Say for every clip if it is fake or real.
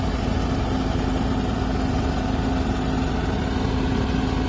real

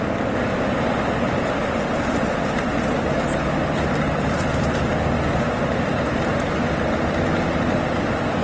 real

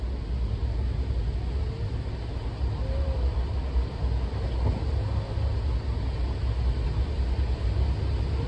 real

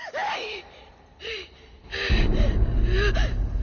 fake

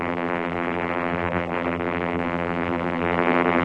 fake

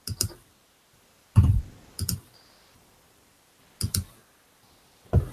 fake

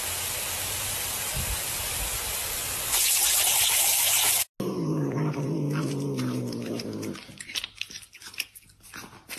real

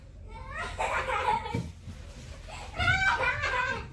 real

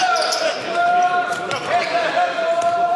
fake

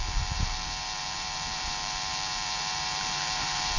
fake